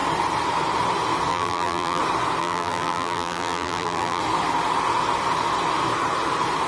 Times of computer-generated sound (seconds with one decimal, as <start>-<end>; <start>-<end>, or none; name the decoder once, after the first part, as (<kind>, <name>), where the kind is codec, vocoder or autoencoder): 1.3-2.0 (vocoder, BigVGAN v2); 2.4-4.2